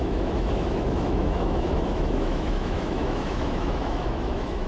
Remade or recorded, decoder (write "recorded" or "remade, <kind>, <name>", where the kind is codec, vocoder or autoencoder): remade, autoencoder, DAC-VAE